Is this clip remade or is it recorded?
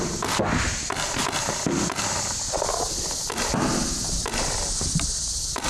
recorded